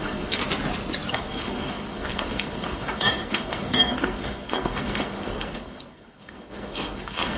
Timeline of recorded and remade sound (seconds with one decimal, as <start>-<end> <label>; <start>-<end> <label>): 0.0-0.4 remade; 0.4-1.1 recorded; 1.1-7.4 remade